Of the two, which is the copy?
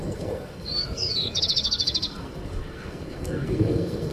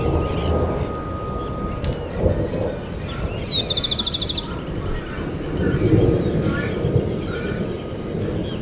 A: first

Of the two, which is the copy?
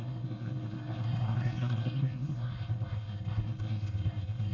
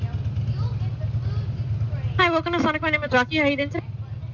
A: first